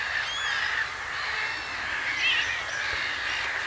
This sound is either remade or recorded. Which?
recorded